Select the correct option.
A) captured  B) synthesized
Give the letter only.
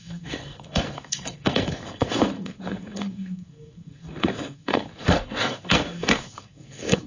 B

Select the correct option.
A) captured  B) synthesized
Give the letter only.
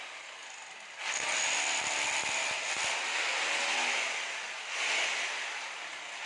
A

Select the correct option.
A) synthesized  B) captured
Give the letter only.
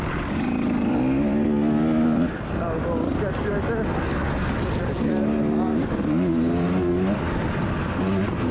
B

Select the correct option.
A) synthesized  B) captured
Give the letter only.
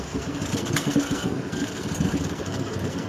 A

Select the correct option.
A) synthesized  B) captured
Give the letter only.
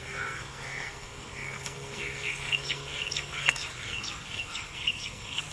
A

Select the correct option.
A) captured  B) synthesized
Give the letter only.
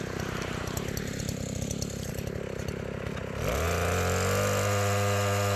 A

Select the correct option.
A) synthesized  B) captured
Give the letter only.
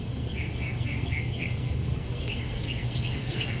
A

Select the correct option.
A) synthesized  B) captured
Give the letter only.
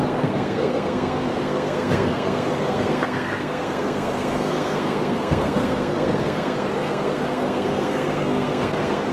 A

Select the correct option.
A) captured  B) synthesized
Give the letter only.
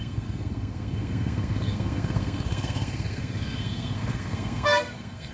B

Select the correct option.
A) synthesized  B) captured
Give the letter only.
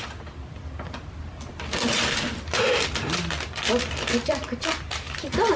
B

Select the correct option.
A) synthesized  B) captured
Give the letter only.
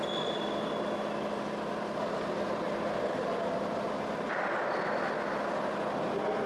B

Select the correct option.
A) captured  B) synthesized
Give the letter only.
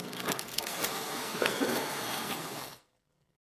B